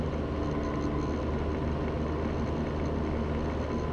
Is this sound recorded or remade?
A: recorded